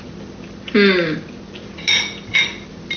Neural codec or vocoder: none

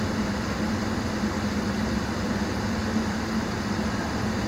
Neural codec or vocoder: none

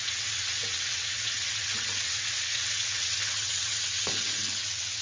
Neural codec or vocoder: vocoder, WaveNeXt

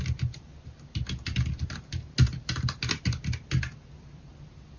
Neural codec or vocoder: none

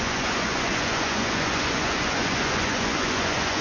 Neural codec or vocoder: vocoder, Vocos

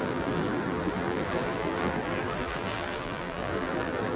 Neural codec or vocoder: vocoder, BigVGAN v2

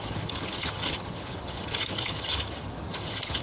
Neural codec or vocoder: vocoder, HiFi-GAN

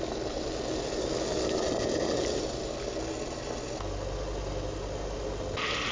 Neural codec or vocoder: none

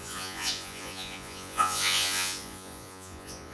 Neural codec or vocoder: vocoder, Vocos